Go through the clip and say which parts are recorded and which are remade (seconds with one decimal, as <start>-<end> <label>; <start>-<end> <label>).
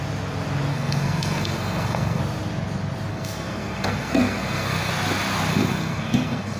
0.0-0.7 recorded; 0.7-2.2 remade; 2.2-3.1 recorded; 3.1-4.9 remade; 4.9-5.5 recorded; 5.5-6.6 remade